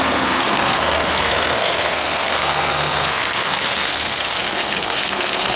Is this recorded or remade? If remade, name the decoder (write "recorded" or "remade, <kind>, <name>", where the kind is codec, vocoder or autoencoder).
remade, codec, SNAC